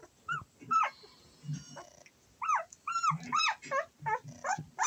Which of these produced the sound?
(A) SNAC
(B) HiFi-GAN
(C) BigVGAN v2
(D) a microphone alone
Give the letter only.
D